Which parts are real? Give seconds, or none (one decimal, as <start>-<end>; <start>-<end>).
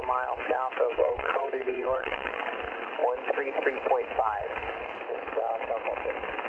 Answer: 0.0-0.9; 2.4-6.5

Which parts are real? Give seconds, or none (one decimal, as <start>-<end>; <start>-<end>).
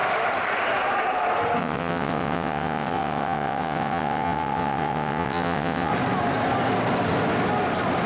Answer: 0.0-1.6; 5.9-8.1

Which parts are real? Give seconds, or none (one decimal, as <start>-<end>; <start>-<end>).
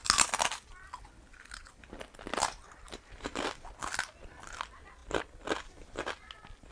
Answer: 0.0-6.7